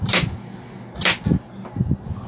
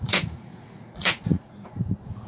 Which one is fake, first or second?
second